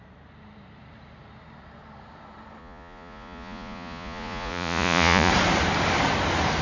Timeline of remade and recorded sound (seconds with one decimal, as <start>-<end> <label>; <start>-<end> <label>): 0.0-2.6 recorded; 2.6-5.3 remade; 5.3-6.6 recorded